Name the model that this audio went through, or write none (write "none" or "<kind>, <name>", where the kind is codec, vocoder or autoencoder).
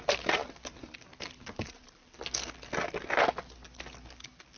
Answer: none